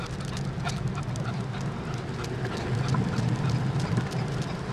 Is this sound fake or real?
real